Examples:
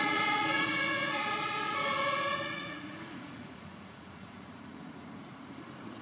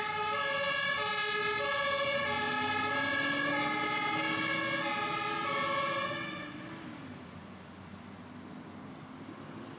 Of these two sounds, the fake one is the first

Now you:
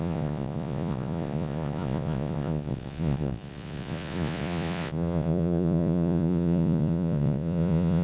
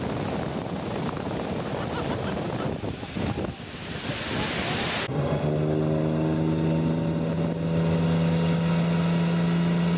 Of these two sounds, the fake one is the first